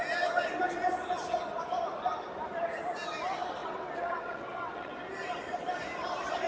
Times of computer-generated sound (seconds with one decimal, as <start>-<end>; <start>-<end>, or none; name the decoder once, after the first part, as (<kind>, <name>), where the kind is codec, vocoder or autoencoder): 3.6-4.9 (vocoder, WaveNeXt)